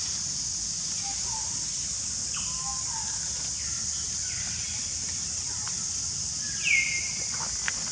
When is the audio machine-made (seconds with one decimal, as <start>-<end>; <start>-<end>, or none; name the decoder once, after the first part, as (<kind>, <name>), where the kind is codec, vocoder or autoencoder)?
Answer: none